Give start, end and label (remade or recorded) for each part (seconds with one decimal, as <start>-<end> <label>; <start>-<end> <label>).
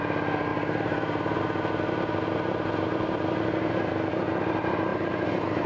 0.0-0.5 recorded; 0.5-3.9 remade; 3.9-4.9 recorded; 4.9-5.7 remade